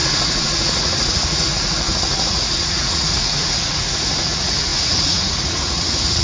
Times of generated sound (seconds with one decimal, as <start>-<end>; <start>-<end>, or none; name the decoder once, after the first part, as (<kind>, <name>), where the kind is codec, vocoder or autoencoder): 0.0-6.2 (vocoder, Vocos)